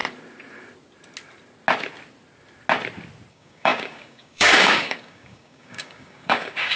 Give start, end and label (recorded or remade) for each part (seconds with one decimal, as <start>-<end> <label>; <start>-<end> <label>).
0.0-3.3 recorded; 3.3-6.8 remade